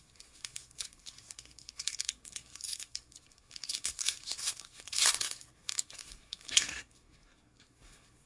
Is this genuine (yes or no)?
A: no